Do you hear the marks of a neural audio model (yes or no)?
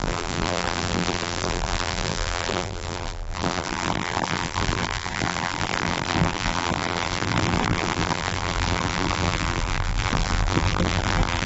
yes